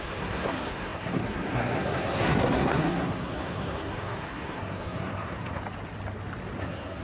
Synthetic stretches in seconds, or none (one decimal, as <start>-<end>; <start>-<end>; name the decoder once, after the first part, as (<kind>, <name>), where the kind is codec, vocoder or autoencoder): 0.0-5.6 (codec, SNAC); 6.6-7.0